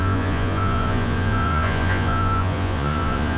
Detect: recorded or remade remade